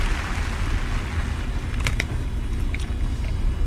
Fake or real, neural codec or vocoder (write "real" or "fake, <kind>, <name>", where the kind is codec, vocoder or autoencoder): real